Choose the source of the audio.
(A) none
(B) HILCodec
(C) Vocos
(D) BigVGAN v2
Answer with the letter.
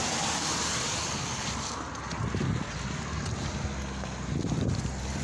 A